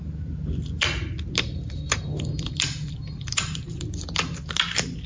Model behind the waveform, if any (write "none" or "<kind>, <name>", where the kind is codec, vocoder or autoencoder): none